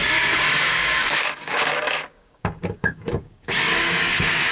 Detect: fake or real fake